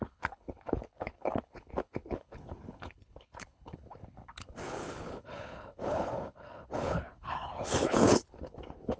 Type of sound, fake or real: fake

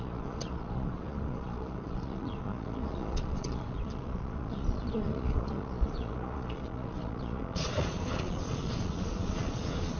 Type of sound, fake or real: fake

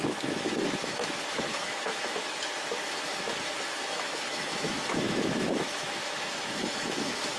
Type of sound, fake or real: fake